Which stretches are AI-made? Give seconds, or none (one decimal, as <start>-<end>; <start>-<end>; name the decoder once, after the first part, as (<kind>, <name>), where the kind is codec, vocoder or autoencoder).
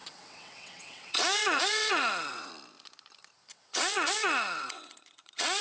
0.0-2.5 (vocoder, WaveNeXt); 3.5-5.6